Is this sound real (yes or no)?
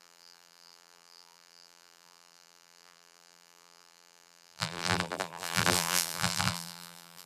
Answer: no